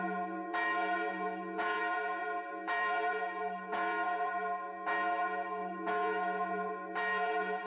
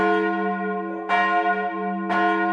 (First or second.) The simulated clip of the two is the first